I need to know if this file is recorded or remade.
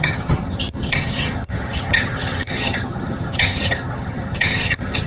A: remade